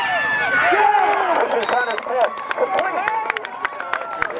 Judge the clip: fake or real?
real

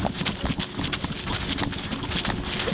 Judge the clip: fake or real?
real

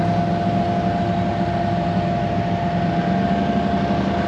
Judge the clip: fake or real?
real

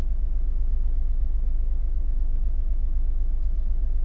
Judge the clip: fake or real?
real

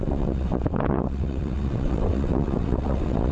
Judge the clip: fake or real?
fake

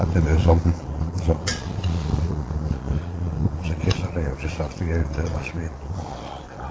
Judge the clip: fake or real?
fake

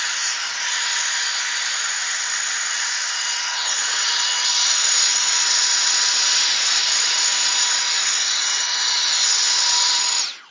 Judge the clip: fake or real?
fake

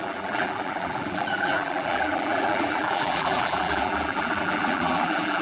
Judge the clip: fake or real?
fake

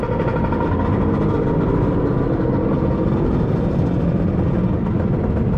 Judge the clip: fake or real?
real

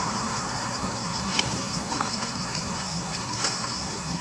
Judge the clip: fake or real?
fake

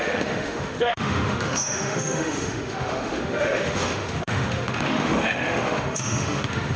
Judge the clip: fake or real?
fake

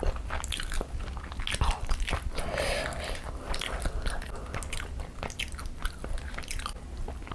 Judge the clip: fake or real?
real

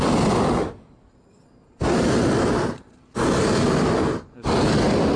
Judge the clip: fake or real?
real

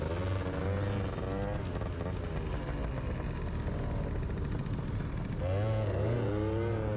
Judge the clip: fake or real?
real